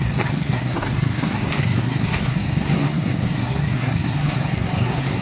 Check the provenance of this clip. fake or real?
fake